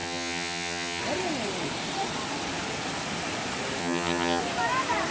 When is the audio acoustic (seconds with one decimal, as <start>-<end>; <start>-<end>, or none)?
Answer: 1.0-3.8; 4.4-5.1